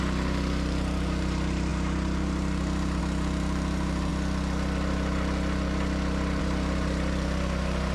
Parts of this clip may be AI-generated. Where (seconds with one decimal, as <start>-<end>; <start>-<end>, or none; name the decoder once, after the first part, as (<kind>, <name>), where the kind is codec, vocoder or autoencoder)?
0.0-4.1 (vocoder, BigVGAN v2); 6.4-7.9